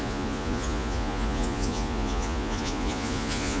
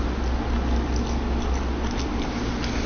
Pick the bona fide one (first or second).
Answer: second